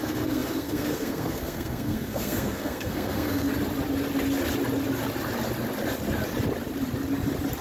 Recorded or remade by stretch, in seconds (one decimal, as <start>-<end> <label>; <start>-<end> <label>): 0.0-3.5 remade; 3.5-7.6 recorded